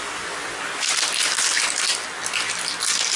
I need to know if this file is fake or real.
real